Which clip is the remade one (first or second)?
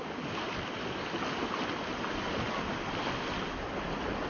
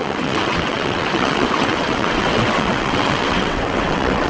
second